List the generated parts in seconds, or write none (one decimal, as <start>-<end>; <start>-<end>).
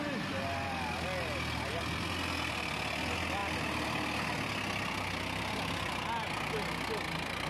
none